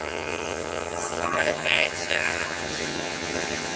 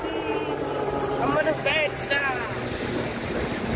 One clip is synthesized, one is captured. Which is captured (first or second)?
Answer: second